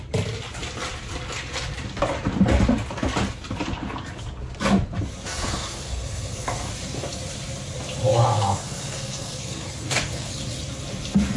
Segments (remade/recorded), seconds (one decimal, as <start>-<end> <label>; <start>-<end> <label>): 0.0-5.2 recorded; 5.2-6.7 remade; 6.7-8.1 recorded; 8.1-10.3 remade; 10.3-11.4 recorded